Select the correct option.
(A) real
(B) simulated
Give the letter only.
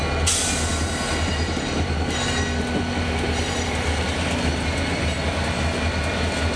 A